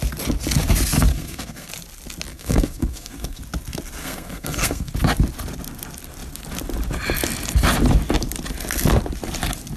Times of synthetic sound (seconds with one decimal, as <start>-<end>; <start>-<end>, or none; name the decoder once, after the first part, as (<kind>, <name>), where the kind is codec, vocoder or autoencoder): 1.1-1.7 (codec, SNAC); 2.3-3.4; 4.0-4.9